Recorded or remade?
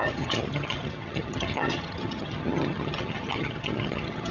remade